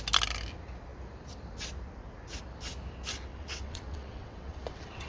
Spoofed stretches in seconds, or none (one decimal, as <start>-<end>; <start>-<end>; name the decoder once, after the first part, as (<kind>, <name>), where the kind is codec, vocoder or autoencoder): 3.3-5.1 (vocoder, WaveNeXt)

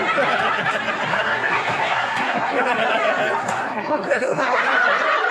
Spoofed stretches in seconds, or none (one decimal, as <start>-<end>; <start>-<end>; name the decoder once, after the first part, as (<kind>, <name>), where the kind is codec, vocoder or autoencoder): 1.1-2.6 (codec, SNAC); 3.4-4.6

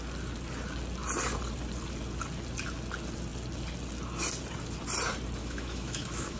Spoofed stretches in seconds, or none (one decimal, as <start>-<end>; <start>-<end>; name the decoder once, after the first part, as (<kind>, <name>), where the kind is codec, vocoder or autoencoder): 5.4-6.4 (autoencoder, DAC-VAE)

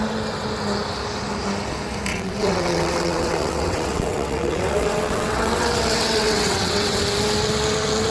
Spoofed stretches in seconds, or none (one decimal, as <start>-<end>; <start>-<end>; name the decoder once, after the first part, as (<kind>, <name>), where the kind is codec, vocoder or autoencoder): 2.1-7.0 (vocoder, WaveNeXt)

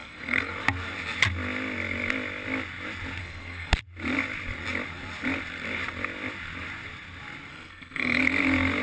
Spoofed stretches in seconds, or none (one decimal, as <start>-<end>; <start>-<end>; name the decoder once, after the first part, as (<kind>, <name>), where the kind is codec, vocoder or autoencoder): 0.0-0.5 (codec, SNAC); 3.2-3.7; 7.5-8.2